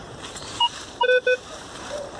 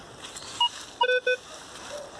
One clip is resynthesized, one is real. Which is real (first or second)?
second